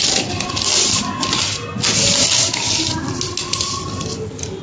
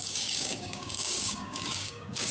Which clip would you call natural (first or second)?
first